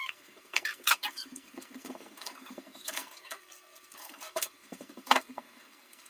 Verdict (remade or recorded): remade